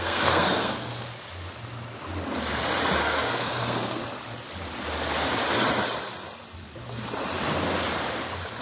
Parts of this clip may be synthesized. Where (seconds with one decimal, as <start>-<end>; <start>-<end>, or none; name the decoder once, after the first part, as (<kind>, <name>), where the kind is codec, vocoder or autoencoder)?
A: 0.0-0.9 (codec, SNAC); 3.0-4.0